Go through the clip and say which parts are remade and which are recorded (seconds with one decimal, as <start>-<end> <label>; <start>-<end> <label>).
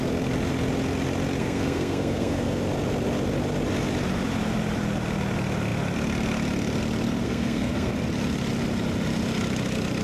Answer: 0.0-1.4 recorded; 1.4-2.6 remade; 2.6-7.2 recorded; 7.2-7.9 remade; 7.9-10.0 recorded